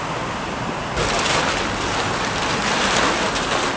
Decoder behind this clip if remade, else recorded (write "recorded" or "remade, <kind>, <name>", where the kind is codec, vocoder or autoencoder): remade, vocoder, BigVGAN v2